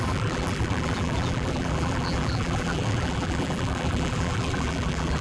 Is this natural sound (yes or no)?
no